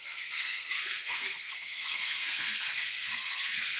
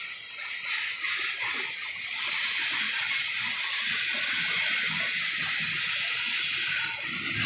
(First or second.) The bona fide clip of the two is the second